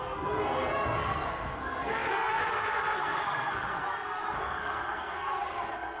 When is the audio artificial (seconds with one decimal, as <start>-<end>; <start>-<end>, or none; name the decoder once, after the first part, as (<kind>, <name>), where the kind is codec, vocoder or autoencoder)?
0.0-6.0 (codec, SNAC)